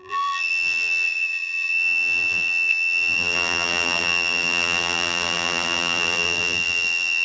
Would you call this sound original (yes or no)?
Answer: no